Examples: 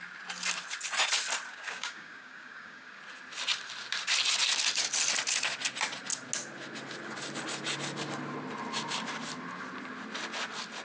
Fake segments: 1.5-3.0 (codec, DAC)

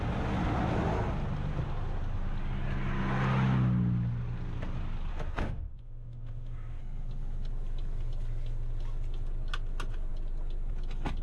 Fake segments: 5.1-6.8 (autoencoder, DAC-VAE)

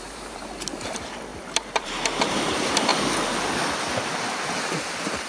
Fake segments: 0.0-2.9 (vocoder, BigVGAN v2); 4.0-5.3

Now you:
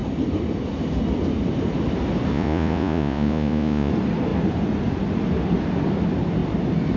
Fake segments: 2.3-3.9 (vocoder, Vocos)